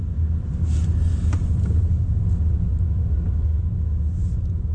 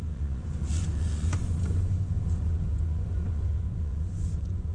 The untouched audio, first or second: first